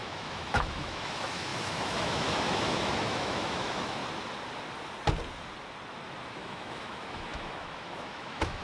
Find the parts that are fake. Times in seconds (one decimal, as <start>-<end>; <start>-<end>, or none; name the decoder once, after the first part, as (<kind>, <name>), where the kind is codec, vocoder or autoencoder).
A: 0.0-4.0 (autoencoder, DAC-VAE); 6.3-8.6